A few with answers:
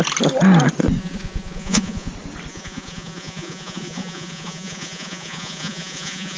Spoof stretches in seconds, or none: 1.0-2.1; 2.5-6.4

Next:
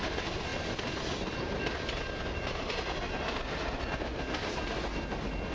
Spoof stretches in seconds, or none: none

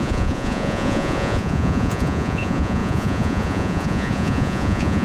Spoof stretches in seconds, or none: 0.0-5.0

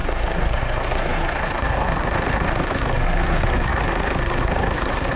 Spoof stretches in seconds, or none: 0.0-5.2

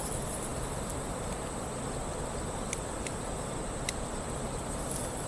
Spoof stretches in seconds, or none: none

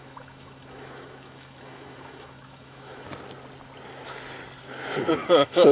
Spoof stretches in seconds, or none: 0.0-3.1; 5.1-5.7